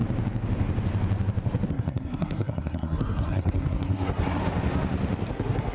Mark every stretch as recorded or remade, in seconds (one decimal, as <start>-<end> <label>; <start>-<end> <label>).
0.0-1.7 recorded; 1.7-4.4 remade; 4.4-5.3 recorded; 5.3-5.7 remade